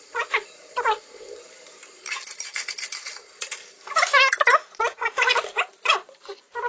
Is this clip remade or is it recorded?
remade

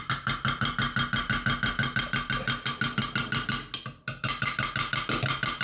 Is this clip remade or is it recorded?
recorded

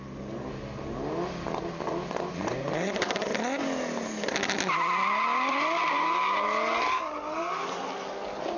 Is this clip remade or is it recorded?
recorded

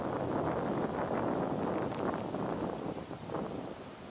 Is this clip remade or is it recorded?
recorded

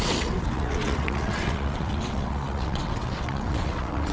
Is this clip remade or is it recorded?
remade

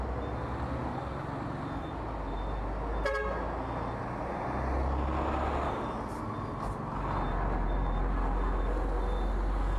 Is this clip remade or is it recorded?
recorded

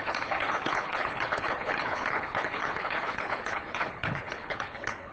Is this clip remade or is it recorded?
remade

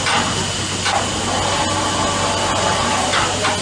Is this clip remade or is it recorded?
recorded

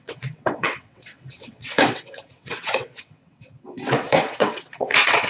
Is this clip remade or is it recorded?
remade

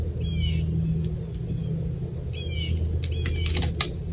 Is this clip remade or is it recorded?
recorded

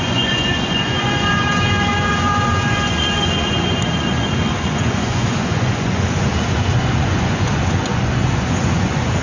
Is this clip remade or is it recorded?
remade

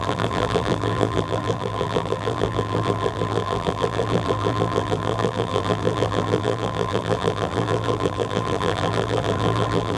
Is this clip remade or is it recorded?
remade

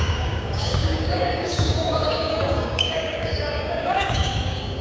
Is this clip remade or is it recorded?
remade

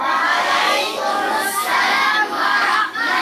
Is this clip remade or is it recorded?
remade